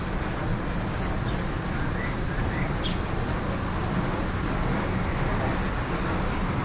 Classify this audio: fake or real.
real